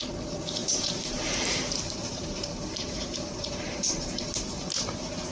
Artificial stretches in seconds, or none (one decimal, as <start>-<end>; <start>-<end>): 0.6-3.8